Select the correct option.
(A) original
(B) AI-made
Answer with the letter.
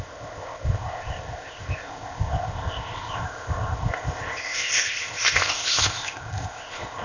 B